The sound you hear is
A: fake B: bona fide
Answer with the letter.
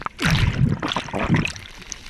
A